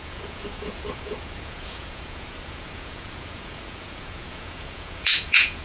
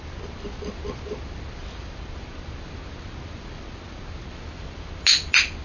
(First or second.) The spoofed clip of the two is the first